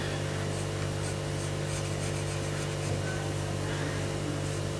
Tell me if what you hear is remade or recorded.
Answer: recorded